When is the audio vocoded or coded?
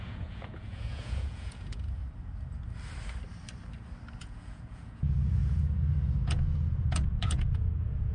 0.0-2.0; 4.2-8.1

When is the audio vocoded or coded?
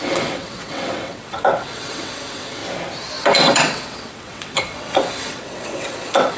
0.0-2.6; 3.2-6.4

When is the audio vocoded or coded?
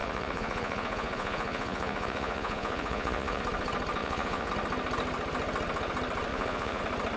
0.0-3.4; 4.0-4.5; 6.3-6.8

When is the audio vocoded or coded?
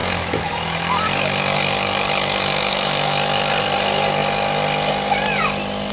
0.0-3.5